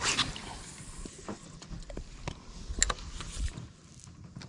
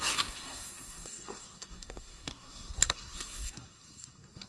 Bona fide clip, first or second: first